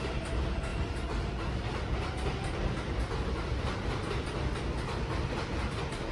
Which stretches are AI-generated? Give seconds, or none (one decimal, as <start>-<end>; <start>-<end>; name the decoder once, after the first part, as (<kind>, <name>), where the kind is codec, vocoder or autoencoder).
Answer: none